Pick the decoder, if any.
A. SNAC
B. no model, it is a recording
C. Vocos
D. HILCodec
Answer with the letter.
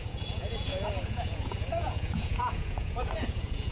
C